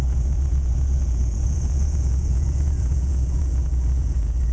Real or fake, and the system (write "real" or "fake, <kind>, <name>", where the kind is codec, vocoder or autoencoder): fake, vocoder, Vocos